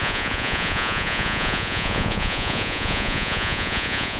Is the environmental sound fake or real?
fake